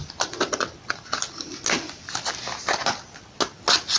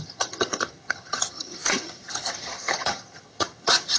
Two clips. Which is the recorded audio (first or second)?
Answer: first